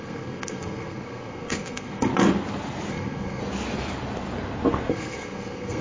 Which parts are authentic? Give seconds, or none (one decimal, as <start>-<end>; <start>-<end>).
2.1-2.9; 3.4-4.9